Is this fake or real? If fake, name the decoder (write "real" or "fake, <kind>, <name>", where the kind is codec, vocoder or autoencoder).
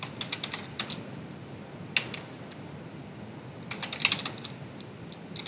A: real